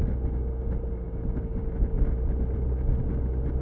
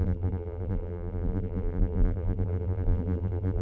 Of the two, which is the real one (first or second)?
first